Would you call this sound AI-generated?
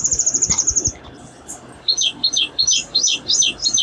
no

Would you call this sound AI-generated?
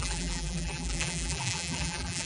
yes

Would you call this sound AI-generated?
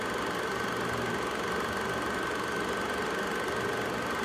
no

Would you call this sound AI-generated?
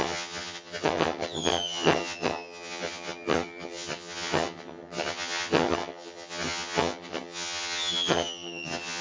yes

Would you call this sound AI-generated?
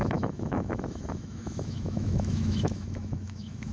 yes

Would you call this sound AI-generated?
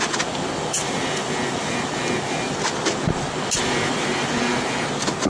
no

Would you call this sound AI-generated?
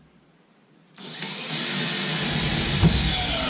no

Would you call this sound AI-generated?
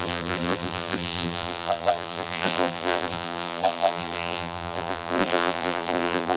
yes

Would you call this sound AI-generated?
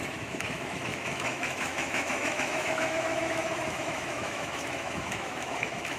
yes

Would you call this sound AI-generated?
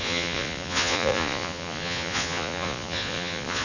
yes